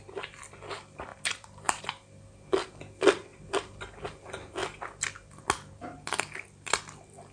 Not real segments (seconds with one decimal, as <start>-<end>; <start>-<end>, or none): 1.1-1.8